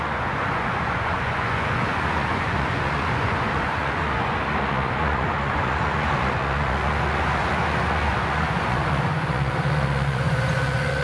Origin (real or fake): fake